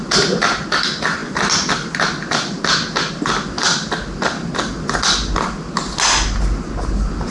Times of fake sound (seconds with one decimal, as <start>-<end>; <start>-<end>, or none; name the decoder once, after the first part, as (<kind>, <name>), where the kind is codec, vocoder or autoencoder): none